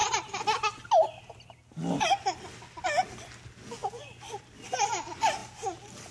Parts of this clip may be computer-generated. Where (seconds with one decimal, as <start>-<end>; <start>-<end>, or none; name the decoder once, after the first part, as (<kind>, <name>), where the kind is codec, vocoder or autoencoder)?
3.8-5.0 (vocoder, BigVGAN v2); 5.4-6.1